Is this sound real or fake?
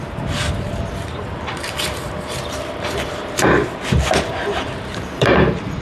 fake